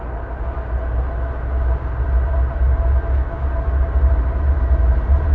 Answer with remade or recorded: recorded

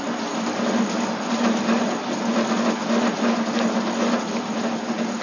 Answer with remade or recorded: recorded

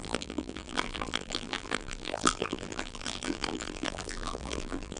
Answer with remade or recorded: remade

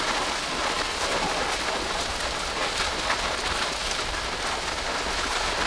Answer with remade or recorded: recorded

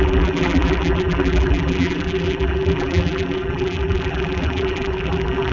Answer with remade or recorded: remade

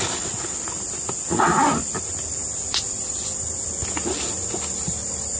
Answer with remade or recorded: recorded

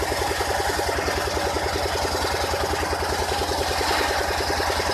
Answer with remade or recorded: recorded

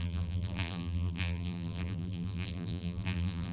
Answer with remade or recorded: remade